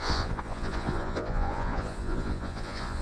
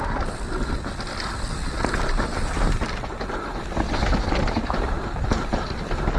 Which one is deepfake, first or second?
first